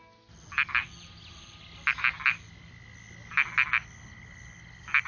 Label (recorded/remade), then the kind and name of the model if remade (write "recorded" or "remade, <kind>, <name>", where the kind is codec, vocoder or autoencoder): recorded